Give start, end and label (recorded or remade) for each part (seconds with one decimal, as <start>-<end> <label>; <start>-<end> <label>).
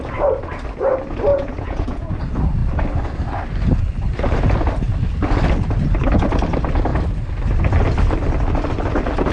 0.0-1.3 recorded; 1.3-2.1 remade; 2.1-9.3 recorded